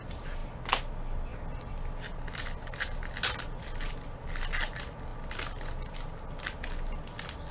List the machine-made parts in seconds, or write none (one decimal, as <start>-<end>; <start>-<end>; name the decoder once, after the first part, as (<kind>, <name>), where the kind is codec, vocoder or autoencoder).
none